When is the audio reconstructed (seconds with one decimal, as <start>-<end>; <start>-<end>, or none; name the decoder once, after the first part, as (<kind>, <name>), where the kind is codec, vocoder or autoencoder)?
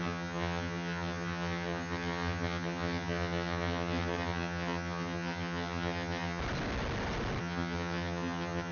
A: 0.0-6.4 (vocoder, HiFi-GAN); 7.4-8.7